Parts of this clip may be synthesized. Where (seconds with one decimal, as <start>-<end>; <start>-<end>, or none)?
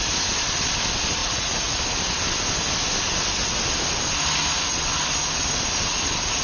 1.2-1.8